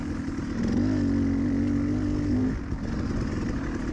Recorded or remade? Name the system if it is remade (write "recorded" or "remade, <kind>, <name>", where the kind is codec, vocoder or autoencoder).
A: recorded